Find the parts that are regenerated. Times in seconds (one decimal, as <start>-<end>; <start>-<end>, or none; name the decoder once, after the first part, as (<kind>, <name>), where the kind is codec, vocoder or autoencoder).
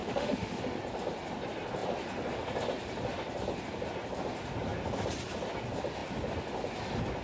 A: 0.0-0.6 (autoencoder, DAC-VAE)